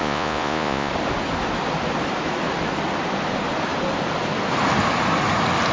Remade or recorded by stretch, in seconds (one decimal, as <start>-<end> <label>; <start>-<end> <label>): 0.0-0.9 remade; 0.9-5.7 recorded